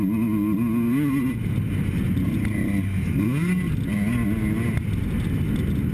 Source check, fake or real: real